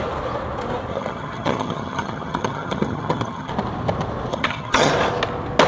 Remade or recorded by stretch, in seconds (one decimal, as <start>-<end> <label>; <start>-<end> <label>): 0.0-0.9 recorded; 0.9-3.5 remade; 3.5-4.3 recorded; 4.3-4.9 remade; 4.9-5.7 recorded